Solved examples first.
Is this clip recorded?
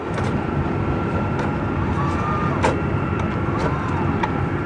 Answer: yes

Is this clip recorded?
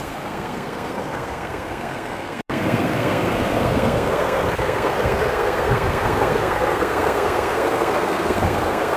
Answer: no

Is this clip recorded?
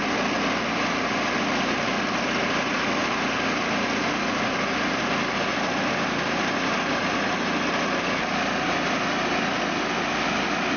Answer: yes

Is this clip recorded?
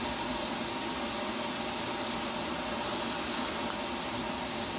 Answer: yes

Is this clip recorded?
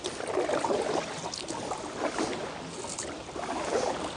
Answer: yes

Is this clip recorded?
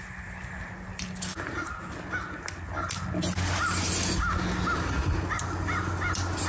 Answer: yes